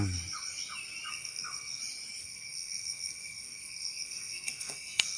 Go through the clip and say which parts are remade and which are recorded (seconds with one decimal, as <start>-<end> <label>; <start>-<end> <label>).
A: 0.0-1.1 recorded; 1.1-1.8 remade; 1.8-2.2 recorded; 2.2-5.2 remade